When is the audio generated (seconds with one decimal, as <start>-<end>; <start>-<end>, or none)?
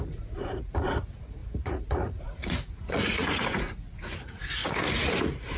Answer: 0.0-5.6